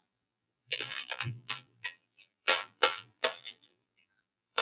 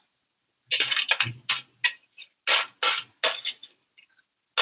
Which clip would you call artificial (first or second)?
first